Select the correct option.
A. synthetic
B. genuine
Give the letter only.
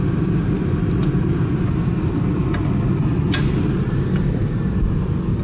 B